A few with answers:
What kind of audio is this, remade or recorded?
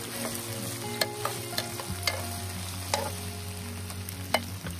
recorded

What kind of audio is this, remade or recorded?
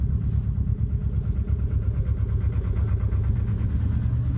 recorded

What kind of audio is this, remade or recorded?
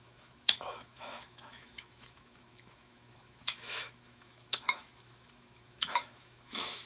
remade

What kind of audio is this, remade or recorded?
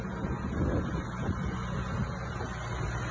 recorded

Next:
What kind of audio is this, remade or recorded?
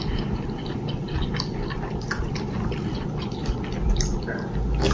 recorded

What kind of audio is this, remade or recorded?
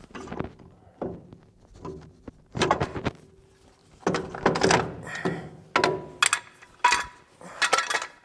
recorded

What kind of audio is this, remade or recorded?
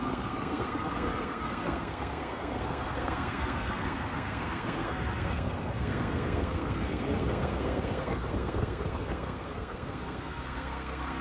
remade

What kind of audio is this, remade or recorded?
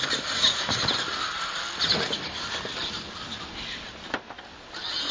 recorded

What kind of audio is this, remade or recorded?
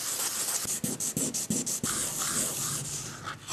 recorded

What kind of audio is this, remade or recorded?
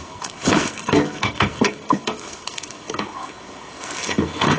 remade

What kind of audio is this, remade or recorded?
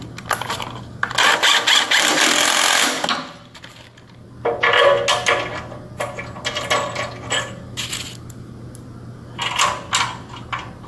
recorded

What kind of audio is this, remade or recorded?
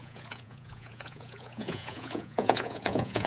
remade